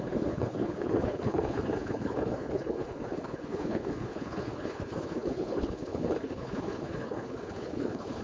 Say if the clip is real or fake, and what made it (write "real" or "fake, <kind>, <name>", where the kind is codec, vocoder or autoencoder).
fake, codec, HILCodec